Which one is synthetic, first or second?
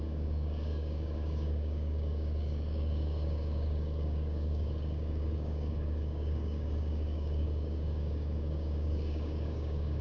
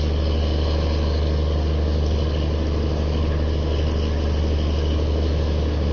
first